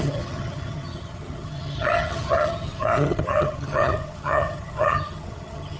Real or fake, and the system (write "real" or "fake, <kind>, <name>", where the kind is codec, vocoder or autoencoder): fake, vocoder, HiFi-GAN